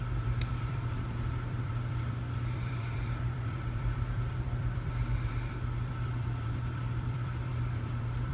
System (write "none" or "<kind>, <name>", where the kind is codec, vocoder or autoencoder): vocoder, BigVGAN v2